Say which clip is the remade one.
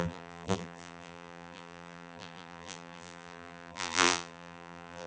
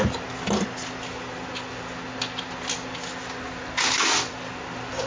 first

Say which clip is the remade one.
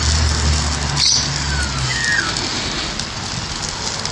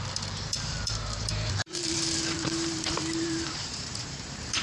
second